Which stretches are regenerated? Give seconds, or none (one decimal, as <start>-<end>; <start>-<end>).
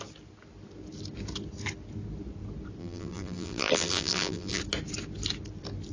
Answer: 2.8-4.6